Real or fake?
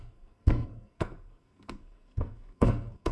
fake